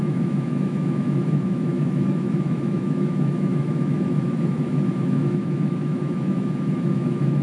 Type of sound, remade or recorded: remade